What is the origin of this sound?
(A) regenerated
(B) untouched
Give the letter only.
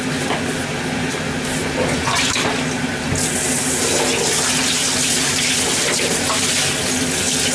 B